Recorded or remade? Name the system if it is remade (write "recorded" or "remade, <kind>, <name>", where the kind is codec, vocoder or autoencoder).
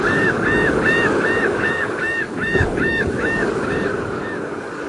remade, codec, DAC